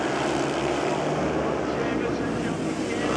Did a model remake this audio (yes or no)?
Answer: no